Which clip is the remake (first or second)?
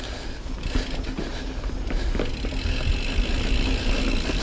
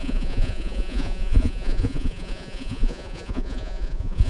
second